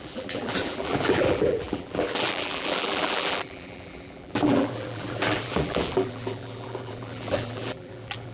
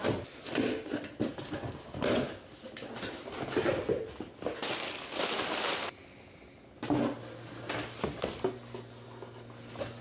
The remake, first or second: first